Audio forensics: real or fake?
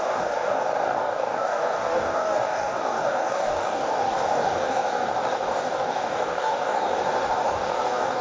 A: fake